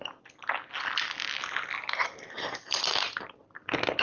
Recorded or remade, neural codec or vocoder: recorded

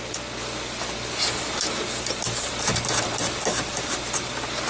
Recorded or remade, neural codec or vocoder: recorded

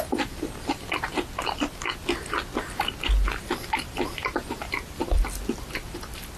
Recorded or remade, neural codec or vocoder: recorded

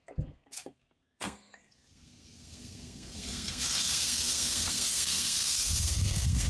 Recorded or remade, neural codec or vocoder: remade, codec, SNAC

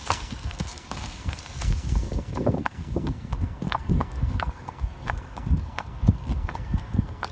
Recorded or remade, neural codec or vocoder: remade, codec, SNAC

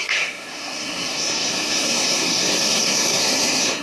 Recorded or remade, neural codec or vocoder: remade, codec, SNAC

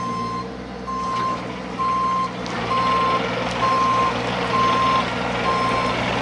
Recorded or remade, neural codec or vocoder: recorded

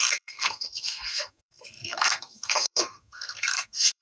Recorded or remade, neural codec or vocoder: remade, codec, SNAC